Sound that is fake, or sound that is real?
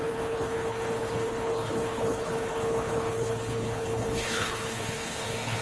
fake